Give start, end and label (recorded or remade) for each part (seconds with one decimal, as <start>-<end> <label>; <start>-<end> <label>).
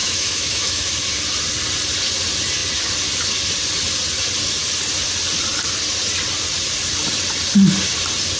0.0-0.9 remade; 0.9-8.4 recorded